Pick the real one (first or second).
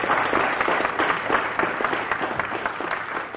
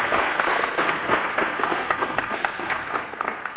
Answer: first